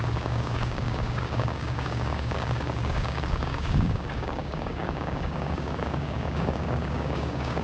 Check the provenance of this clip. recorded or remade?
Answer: remade